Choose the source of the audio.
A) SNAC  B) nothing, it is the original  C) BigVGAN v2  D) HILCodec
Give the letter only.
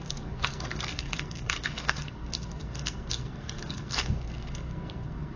A